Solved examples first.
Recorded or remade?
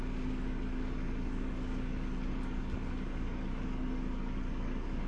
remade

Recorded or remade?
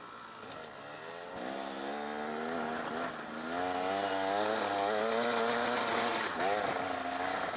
recorded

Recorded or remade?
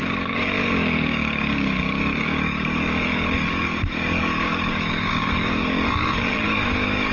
remade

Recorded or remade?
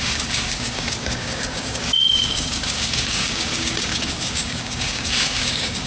remade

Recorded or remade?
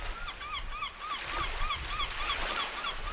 recorded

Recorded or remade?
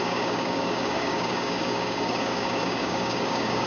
remade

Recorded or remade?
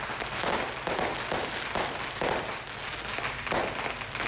recorded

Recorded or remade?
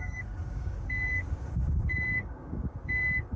remade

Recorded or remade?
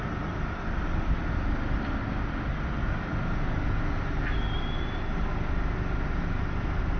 recorded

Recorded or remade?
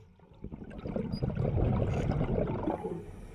recorded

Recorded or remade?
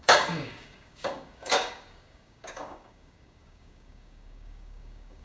remade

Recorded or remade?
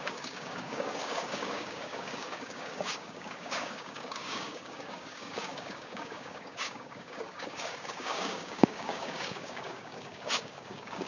remade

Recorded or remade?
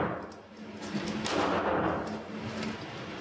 recorded